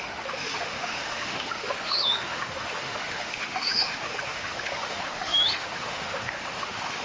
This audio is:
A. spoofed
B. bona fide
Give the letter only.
A